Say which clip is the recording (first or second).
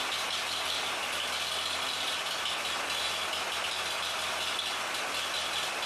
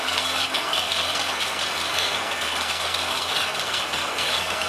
first